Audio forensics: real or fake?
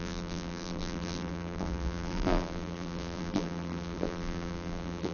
fake